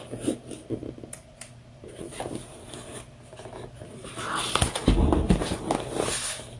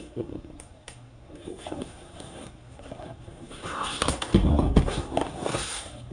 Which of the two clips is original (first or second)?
first